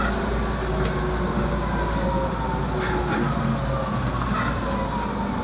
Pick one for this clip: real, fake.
real